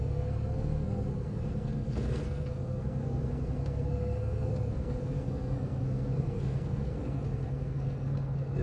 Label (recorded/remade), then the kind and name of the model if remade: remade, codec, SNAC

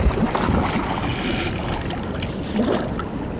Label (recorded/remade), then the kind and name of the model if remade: recorded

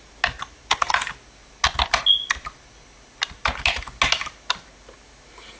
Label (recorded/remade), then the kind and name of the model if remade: recorded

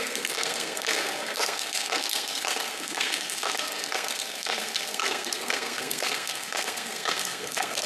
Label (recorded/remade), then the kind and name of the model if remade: remade, codec, SNAC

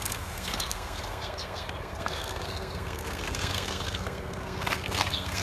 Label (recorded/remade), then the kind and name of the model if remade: remade, codec, SNAC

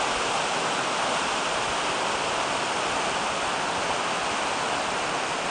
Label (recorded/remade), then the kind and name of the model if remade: recorded